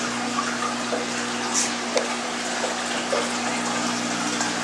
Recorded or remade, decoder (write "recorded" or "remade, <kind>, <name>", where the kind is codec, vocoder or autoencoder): recorded